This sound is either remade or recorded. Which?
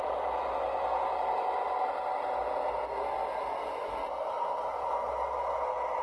recorded